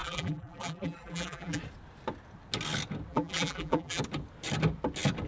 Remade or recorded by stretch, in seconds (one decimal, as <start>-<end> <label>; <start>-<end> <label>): 0.0-1.6 remade; 1.6-3.1 recorded; 3.1-4.0 remade; 4.0-5.3 recorded